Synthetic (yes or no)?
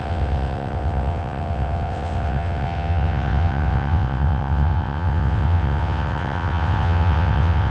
yes